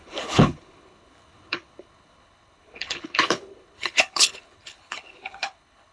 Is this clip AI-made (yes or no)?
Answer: yes